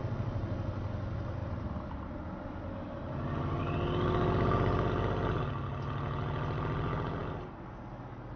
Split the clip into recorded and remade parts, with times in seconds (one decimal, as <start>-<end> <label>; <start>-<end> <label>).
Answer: 0.0-8.4 recorded